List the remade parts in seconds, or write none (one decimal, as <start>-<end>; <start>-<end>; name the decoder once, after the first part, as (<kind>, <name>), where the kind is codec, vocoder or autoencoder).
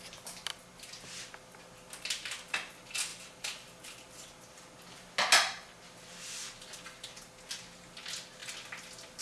none